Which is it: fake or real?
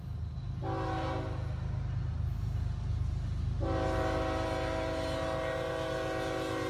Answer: real